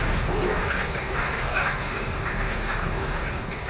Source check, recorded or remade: remade